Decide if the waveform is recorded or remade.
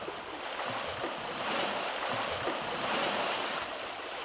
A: recorded